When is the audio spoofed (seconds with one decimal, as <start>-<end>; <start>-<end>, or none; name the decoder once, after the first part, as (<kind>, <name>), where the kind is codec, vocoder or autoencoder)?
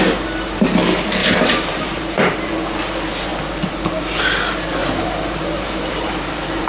1.2-2.5 (vocoder, BigVGAN v2); 4.8-6.7